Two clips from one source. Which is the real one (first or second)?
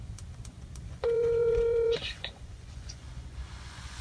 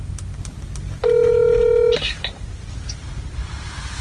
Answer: second